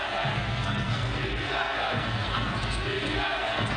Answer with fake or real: fake